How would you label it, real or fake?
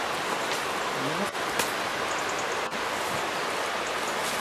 real